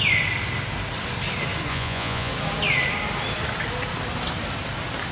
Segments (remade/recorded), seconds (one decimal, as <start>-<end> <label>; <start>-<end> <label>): 0.0-1.7 recorded; 1.7-2.3 remade; 2.3-5.1 recorded